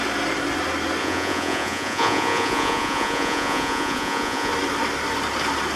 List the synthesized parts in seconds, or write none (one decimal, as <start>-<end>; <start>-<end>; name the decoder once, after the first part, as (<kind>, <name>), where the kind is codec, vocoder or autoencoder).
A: 1.0-4.5 (vocoder, Vocos)

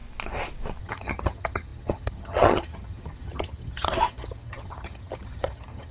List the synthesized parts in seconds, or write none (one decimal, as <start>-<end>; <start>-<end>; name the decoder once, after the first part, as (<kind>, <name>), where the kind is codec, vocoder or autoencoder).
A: 0.8-5.9 (vocoder, HiFi-GAN)